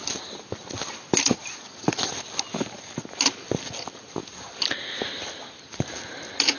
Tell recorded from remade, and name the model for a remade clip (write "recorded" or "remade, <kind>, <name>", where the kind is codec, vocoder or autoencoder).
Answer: recorded